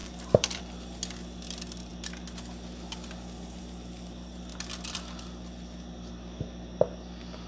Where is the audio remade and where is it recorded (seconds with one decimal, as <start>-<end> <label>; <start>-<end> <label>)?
0.0-0.6 remade; 0.6-4.5 recorded; 4.5-6.1 remade; 6.1-7.5 recorded